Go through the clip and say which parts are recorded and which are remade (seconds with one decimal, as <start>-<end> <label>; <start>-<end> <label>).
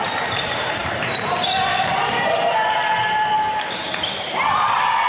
0.0-5.1 remade